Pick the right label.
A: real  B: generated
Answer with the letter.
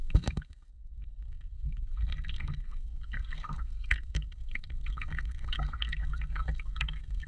B